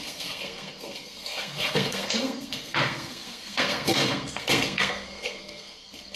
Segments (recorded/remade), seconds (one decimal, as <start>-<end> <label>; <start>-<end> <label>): 0.0-6.2 remade